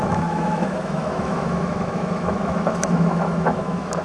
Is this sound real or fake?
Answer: fake